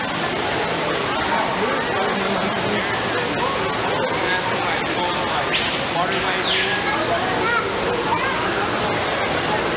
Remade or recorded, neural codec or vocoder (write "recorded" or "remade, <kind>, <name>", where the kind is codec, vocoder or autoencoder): recorded